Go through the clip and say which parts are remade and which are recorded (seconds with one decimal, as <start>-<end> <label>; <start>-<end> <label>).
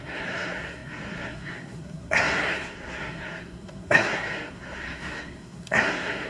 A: 0.0-6.3 remade